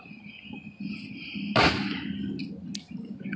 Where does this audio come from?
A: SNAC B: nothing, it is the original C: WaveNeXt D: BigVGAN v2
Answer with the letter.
B